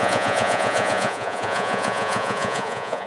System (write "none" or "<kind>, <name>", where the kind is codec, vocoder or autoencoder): vocoder, Vocos